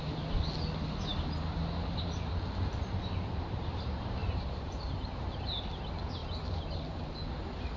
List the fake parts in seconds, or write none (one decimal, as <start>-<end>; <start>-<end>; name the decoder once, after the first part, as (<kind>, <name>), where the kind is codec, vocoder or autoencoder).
4.2-5.6 (vocoder, BigVGAN v2)